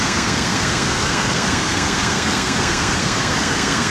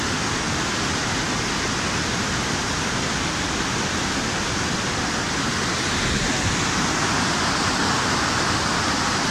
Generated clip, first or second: first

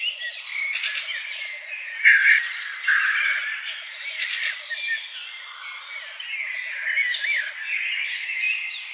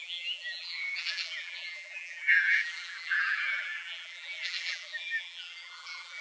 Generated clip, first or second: second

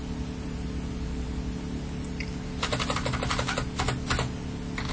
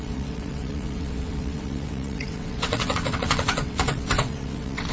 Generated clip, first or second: second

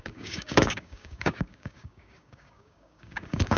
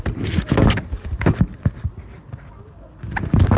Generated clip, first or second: first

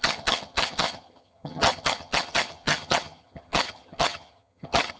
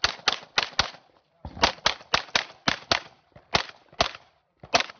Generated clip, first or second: first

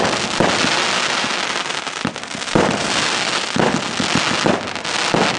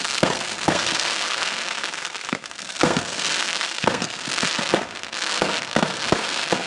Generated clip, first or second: second